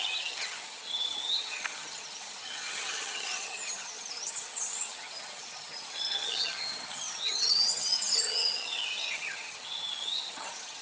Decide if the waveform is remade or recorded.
remade